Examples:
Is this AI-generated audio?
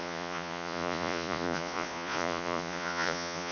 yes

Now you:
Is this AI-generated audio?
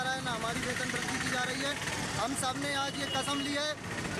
no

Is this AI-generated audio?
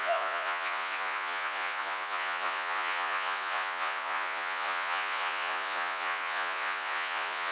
yes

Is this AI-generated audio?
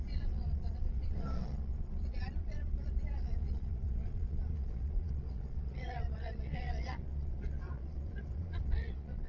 yes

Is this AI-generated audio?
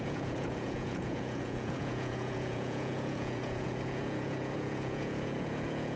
yes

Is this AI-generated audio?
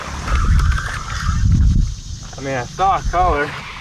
no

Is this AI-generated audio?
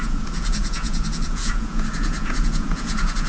yes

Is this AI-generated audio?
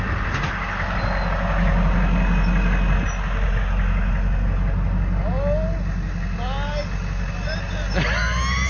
no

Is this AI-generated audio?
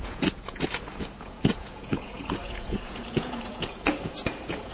yes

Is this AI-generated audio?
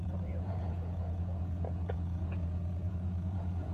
yes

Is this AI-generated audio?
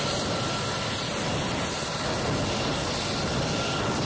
no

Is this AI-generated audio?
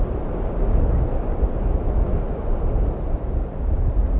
no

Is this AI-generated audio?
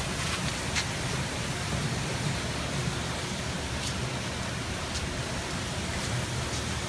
no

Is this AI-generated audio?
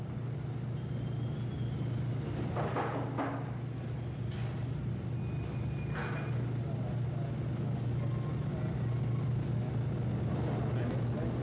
no